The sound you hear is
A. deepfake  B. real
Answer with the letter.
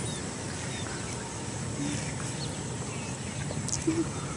B